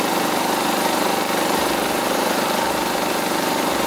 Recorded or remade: remade